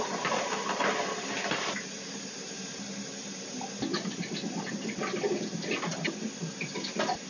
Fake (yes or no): no